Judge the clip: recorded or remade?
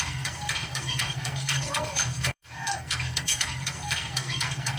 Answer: remade